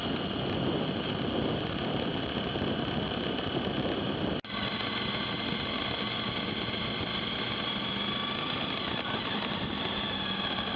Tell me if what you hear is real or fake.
real